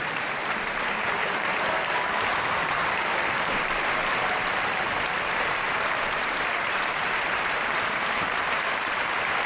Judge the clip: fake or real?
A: fake